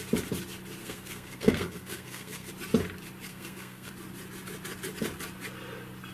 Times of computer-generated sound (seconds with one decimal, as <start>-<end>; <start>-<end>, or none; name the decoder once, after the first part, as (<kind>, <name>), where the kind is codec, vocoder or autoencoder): 0.8-2.5 (codec, SNAC); 3.3-3.9